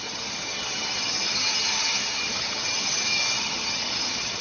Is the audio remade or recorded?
remade